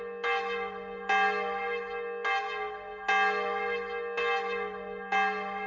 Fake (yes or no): no